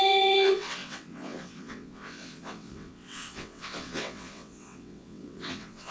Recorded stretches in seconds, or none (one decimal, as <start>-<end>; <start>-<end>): none